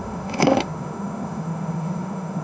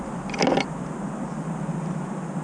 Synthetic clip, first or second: first